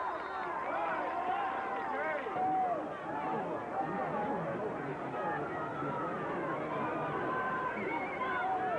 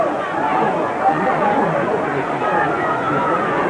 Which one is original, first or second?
first